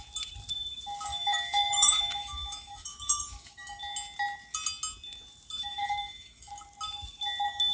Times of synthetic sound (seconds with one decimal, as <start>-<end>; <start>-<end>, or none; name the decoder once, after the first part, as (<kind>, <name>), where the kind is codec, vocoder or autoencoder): 1.1-3.8 (autoencoder, DAC-VAE); 5.6-6.5